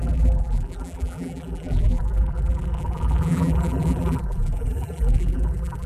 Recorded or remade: remade